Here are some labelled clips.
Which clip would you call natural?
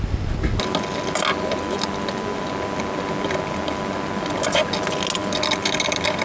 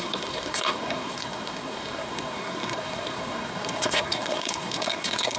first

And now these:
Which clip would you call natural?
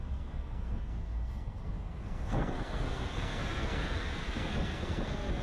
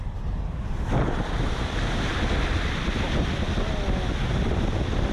second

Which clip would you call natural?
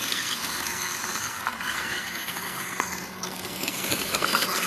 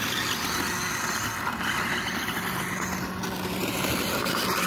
second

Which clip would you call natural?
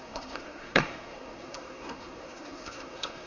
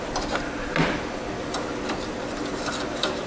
second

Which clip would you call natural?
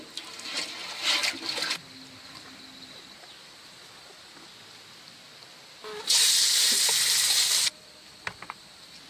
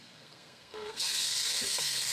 first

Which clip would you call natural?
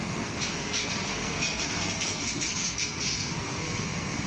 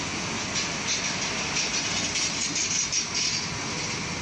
second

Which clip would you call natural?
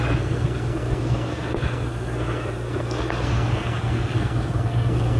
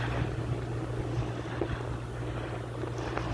second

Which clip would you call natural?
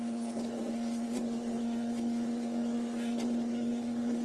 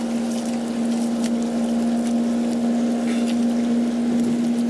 second